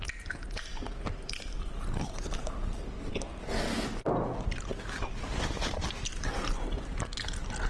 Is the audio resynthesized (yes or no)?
no